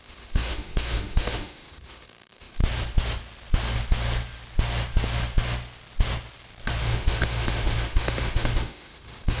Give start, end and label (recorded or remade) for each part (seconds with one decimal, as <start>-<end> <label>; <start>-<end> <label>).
0.0-2.6 remade; 2.6-6.8 recorded; 6.8-9.4 remade